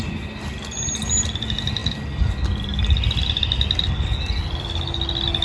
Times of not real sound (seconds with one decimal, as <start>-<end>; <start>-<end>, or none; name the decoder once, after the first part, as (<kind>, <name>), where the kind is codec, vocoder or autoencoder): none